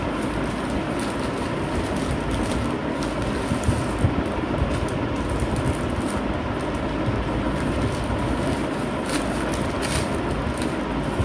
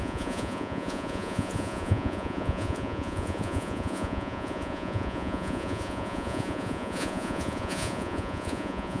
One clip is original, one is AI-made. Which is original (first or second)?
first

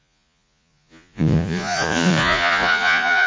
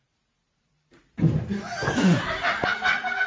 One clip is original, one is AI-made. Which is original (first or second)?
second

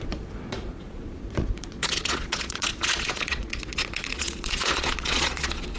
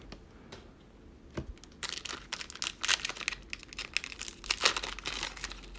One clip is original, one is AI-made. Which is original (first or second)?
second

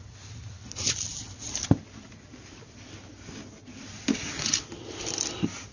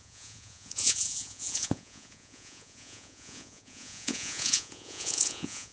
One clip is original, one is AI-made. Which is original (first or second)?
first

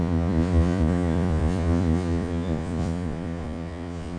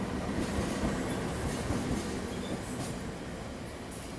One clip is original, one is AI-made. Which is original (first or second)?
second